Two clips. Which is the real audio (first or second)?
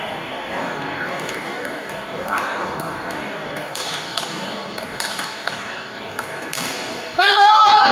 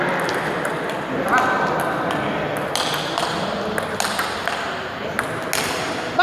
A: second